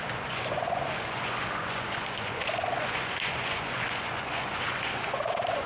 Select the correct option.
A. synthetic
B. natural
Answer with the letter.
A